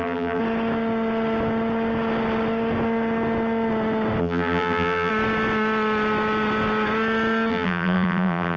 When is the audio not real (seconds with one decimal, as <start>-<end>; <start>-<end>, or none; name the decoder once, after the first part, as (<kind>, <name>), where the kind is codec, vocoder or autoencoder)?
0.0-0.4 (vocoder, BigVGAN v2); 4.2-5.1; 7.5-8.6